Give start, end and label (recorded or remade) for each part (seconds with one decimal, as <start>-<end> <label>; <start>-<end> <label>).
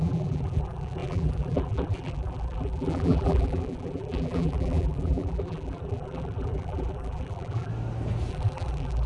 0.0-7.7 remade; 7.7-8.3 recorded; 8.3-9.1 remade